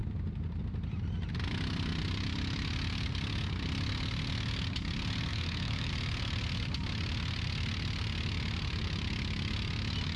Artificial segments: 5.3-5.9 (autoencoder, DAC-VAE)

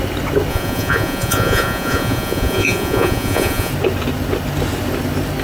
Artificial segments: 0.5-3.7 (vocoder, Vocos)

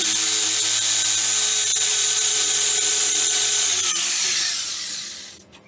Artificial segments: 1.7-5.1 (vocoder, Vocos)

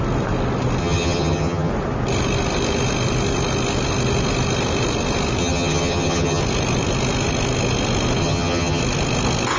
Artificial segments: 0.8-1.7 (vocoder, HiFi-GAN); 5.4-6.4; 8.2-8.8

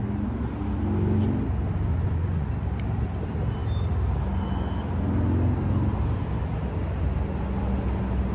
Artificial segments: 1.9-2.5 (vocoder, Vocos)

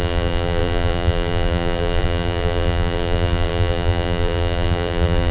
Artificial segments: 0.0-5.3 (vocoder, BigVGAN v2)

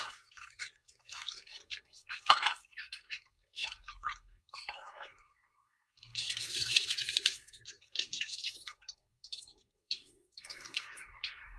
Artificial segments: 0.0-11.6 (codec, SNAC)